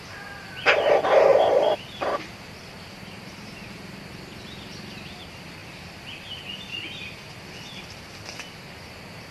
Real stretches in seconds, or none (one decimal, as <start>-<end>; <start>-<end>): 0.0-3.3; 4.0-5.6; 7.1-9.3